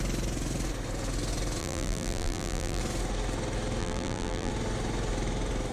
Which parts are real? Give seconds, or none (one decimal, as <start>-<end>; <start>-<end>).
0.0-1.6; 2.8-3.8; 4.5-5.7